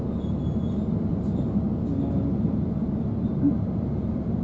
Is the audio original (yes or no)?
yes